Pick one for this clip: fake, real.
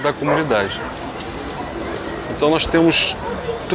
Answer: real